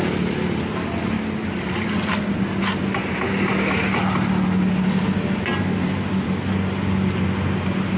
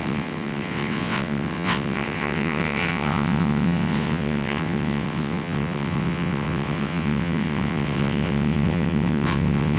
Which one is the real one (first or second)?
first